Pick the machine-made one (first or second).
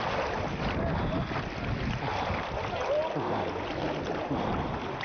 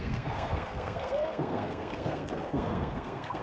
second